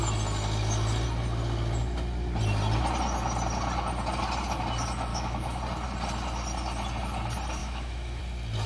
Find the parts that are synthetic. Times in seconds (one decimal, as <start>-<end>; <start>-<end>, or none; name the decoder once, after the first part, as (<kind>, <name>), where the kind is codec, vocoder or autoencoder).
5.1-5.6 (autoencoder, DAC-VAE); 7.6-8.2